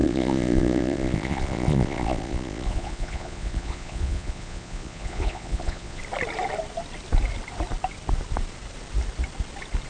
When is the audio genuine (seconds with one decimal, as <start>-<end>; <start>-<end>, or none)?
6.0-9.9

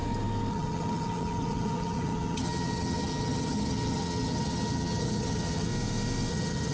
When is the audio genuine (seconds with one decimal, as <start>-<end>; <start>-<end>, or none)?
0.0-0.5; 5.7-6.3

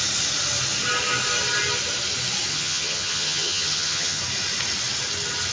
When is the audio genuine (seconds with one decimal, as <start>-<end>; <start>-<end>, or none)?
0.0-2.5; 4.2-5.5

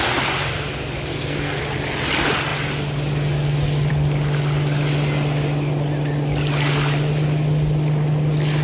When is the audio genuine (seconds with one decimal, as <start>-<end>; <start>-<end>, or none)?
0.0-1.1; 1.6-8.6

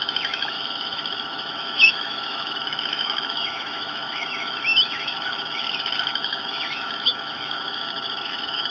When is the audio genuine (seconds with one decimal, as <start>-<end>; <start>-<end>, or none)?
none

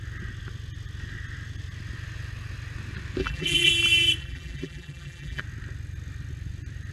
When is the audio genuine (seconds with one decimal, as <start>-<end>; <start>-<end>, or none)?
0.0-3.2; 3.7-4.2; 5.4-6.9